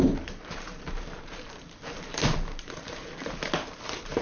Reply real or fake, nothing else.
fake